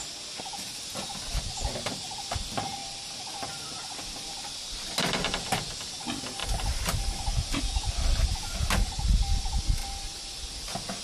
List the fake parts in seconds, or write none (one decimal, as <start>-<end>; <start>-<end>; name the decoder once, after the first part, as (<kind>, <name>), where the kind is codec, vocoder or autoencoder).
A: 2.8-4.5 (vocoder, BigVGAN v2)